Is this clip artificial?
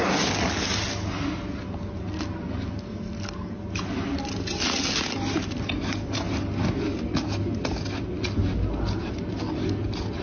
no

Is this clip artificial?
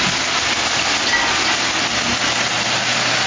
no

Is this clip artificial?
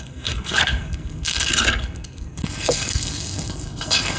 yes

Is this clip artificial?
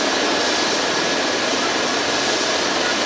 no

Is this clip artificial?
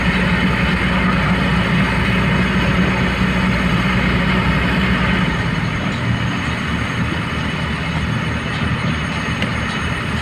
no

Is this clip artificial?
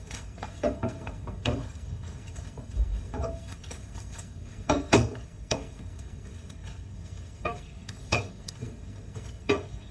yes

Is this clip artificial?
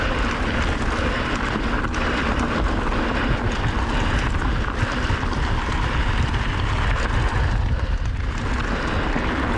no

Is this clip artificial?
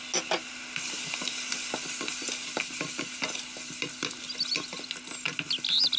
no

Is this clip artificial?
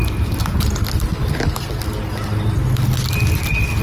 no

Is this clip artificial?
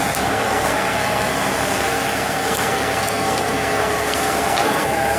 yes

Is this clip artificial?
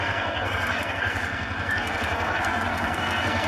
yes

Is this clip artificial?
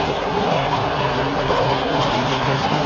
yes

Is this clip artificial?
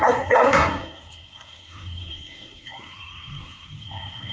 yes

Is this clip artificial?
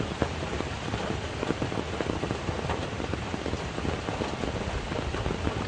no